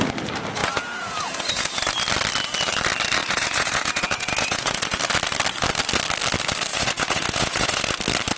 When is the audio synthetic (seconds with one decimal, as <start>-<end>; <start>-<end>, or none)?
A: 0.6-1.8; 3.2-5.0; 6.7-8.0